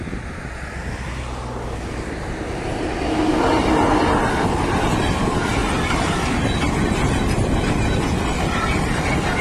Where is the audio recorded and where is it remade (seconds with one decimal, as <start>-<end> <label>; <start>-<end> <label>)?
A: 0.0-9.4 recorded